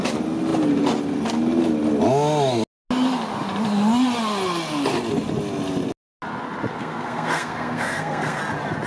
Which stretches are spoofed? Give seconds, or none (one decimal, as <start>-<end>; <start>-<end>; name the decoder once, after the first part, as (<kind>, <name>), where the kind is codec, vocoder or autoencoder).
6.7-8.4 (codec, SNAC)